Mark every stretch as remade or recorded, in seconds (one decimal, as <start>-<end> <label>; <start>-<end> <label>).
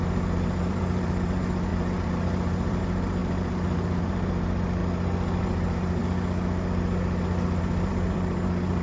0.0-4.8 remade; 4.8-5.4 recorded; 5.4-6.0 remade; 6.0-7.6 recorded; 7.6-8.8 remade